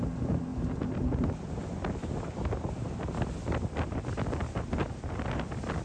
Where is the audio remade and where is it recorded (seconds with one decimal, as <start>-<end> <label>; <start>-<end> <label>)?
0.0-5.8 recorded